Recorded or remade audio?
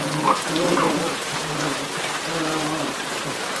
remade